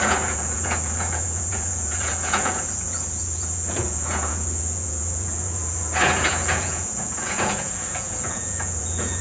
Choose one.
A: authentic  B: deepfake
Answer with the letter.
B